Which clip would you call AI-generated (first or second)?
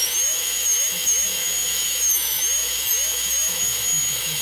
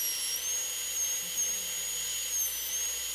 first